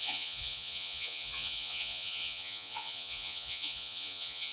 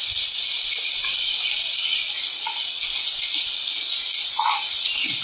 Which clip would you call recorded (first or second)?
second